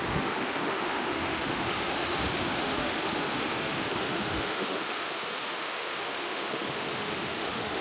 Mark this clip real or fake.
fake